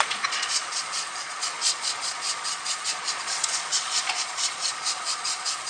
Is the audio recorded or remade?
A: remade